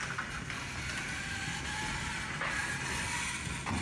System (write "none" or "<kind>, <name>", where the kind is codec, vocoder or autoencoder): none